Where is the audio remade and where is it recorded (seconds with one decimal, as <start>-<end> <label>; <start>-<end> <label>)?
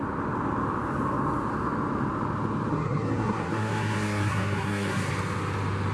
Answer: 0.0-2.7 recorded; 2.7-5.1 remade; 5.1-5.9 recorded